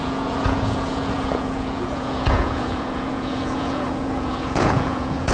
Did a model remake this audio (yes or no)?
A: yes